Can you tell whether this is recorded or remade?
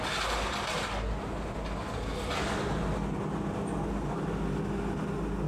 recorded